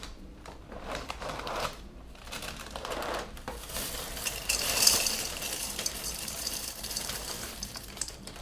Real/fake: fake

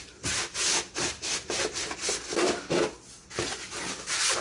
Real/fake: real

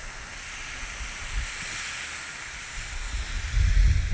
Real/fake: real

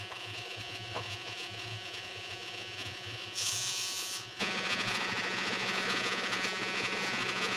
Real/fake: fake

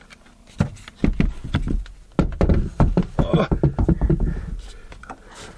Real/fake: real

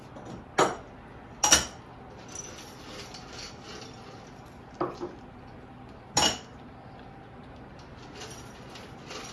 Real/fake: real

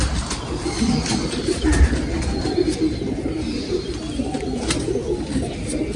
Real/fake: real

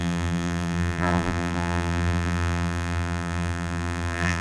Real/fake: fake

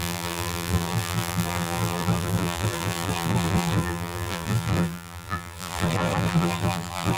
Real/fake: fake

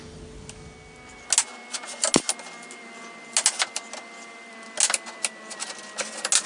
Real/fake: real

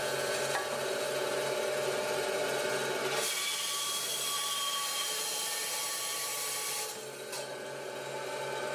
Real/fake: real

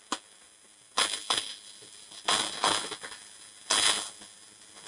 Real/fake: real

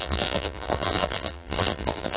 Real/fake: fake